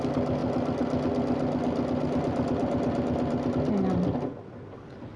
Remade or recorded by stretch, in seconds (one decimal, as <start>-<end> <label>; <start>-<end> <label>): 0.0-5.2 recorded